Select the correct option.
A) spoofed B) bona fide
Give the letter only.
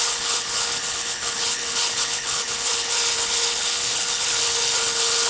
A